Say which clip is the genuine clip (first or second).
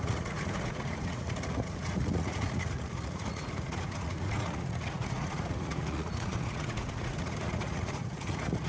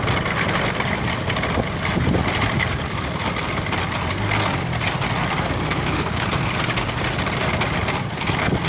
second